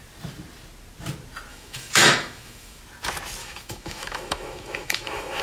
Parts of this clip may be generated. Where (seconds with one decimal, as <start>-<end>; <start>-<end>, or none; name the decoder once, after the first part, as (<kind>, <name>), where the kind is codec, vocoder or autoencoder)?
1.5-2.8 (autoencoder, DAC-VAE); 3.4-5.4